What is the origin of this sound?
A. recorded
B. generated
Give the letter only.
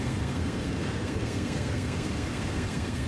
B